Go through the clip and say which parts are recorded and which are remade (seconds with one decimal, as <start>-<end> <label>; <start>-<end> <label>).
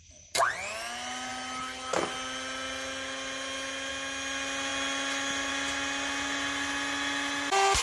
0.0-7.8 recorded